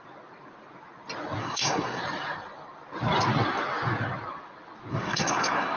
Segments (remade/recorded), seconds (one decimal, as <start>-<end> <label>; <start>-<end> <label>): 0.0-1.4 recorded; 1.4-2.0 remade; 2.0-4.9 recorded; 4.9-5.8 remade